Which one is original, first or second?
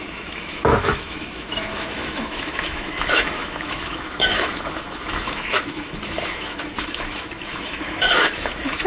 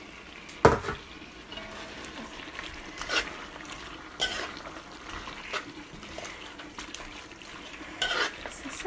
second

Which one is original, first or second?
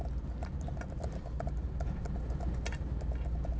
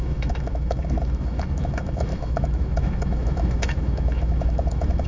first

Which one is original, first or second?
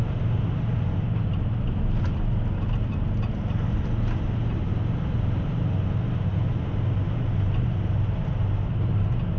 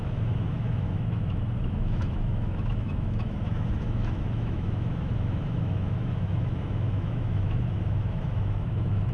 first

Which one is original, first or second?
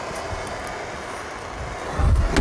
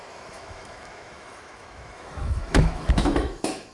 first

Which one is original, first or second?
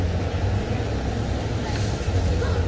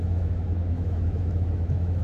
first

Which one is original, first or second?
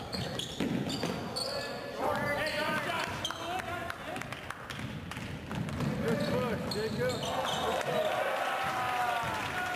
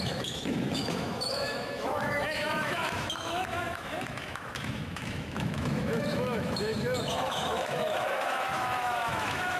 first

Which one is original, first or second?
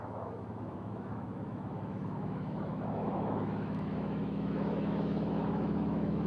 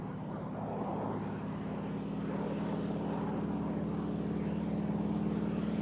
second